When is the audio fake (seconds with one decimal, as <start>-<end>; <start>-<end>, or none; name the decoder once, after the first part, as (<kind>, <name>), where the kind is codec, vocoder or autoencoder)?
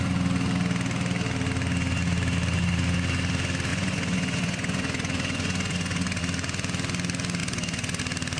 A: 3.7-6.2 (vocoder, Vocos); 7.4-8.0